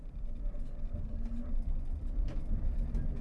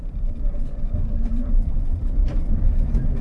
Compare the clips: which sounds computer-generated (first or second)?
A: second